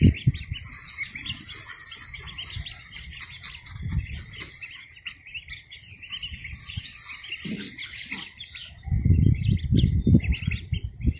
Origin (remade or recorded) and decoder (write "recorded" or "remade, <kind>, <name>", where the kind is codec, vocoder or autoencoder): recorded